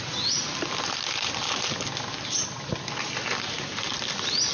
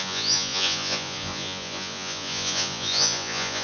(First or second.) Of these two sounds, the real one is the first